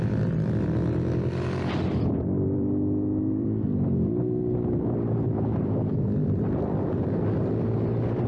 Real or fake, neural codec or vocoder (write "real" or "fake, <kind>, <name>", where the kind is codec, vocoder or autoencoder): fake, vocoder, BigVGAN v2